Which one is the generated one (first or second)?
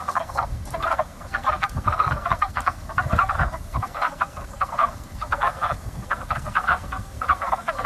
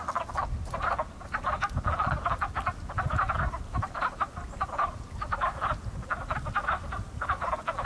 first